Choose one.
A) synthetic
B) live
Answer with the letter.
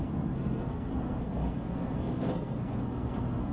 A